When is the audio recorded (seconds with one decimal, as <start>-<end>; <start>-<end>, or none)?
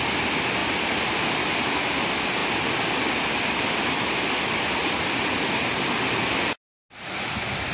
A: 0.0-7.7